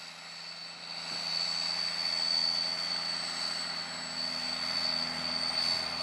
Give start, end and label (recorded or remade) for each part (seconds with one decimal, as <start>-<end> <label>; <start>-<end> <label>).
0.0-6.0 recorded